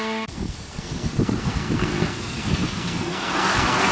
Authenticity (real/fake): fake